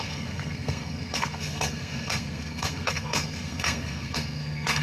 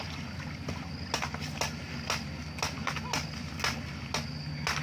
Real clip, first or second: second